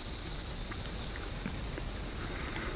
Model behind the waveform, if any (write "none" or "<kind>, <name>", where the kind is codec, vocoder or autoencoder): none